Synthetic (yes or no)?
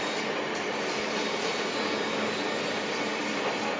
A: no